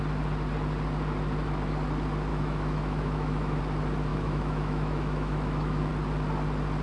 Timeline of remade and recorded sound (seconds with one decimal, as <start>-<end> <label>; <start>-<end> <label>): 0.0-2.3 recorded; 2.3-3.6 remade; 3.6-4.1 recorded; 4.1-5.9 remade; 5.9-6.8 recorded